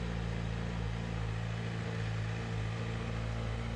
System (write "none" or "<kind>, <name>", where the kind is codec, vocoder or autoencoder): none